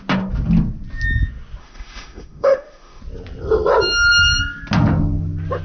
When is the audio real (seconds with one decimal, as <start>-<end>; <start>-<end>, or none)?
0.0-1.6; 3.0-5.6